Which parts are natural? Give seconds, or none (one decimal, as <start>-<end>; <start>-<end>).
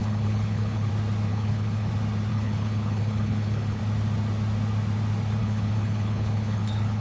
0.9-1.3; 1.9-2.3; 3.8-5.4